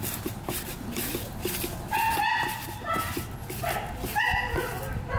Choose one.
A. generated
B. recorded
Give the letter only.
B